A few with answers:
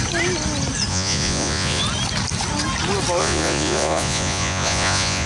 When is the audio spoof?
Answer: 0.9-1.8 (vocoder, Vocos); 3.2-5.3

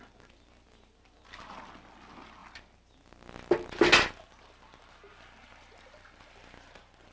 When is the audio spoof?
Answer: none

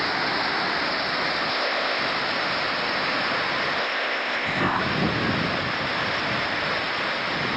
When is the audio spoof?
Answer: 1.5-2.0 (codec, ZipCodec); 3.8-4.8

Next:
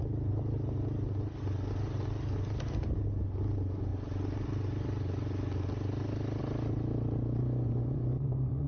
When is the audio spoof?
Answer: 7.4-8.7 (vocoder, Vocos)